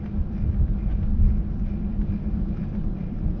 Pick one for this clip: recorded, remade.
remade